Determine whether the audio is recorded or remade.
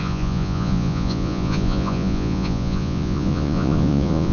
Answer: remade